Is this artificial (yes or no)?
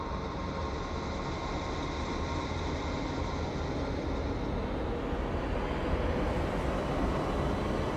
no